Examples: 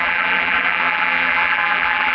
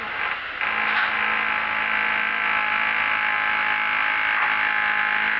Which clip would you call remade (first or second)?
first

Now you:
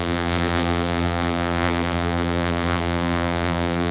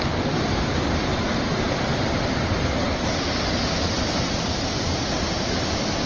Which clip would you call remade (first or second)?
first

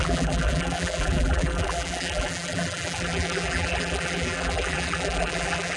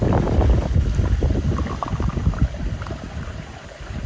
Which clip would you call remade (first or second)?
first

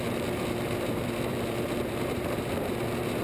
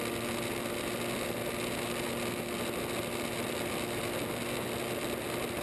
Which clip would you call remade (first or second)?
first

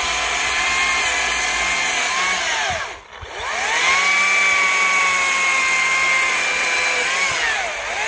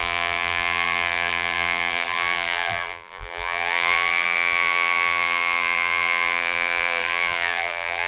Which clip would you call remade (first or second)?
second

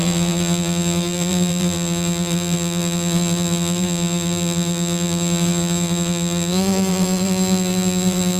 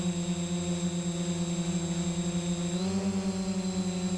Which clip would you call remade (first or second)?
first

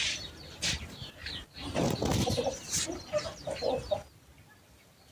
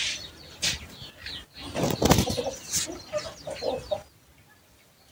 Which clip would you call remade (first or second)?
first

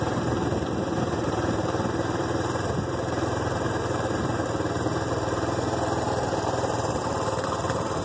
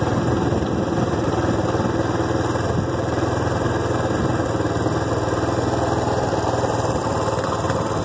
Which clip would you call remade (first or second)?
first